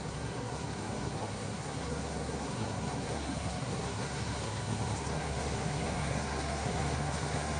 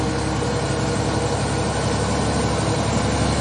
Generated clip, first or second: first